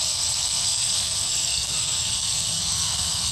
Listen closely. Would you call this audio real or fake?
fake